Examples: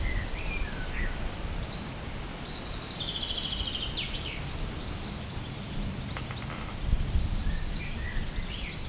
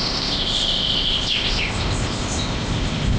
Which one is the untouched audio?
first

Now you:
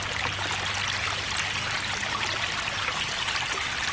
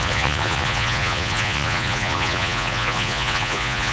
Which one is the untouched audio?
first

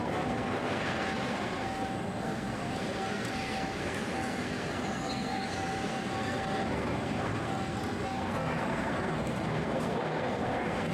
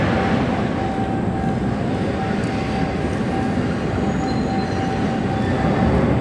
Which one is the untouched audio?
second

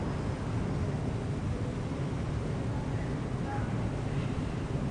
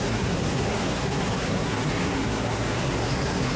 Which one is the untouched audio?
first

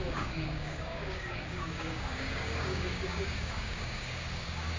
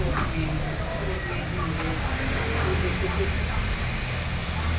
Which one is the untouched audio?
second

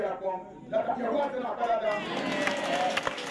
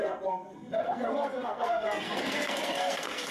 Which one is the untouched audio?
first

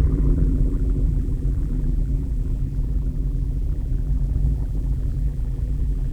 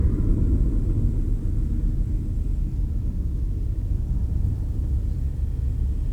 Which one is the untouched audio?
second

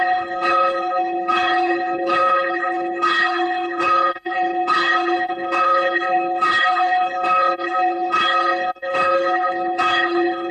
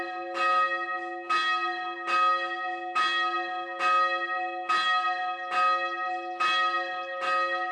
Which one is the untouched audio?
second